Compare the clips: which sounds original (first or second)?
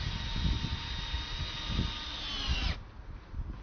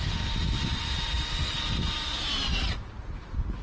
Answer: first